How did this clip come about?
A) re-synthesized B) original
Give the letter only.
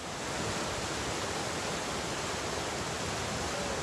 B